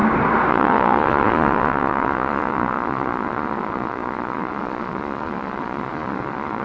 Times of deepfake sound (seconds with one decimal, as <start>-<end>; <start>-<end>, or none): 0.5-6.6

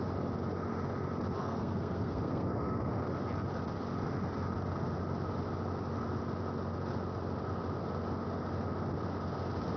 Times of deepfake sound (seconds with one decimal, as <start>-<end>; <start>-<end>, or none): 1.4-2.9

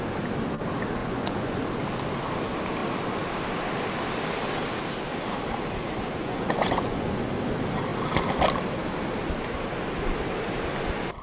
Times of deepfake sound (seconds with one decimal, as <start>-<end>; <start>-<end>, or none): 1.0-1.6; 6.2-7.2

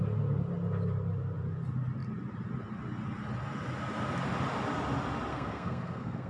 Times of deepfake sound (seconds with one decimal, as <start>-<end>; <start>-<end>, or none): 5.3-6.3

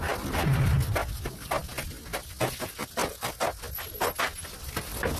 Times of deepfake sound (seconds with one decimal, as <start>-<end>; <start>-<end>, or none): none